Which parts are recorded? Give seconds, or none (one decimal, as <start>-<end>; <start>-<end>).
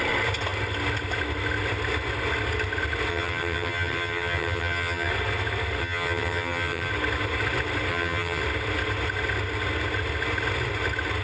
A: 0.0-3.1; 5.1-5.8; 6.9-7.9; 8.4-11.2